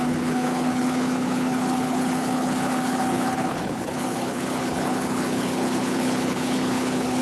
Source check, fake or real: fake